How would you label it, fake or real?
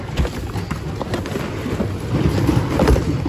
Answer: real